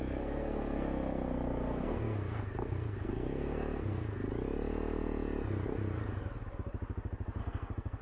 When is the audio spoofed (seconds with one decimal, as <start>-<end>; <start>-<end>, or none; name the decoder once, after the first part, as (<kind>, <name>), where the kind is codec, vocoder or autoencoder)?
0.0-4.3 (codec, SNAC); 7.4-8.0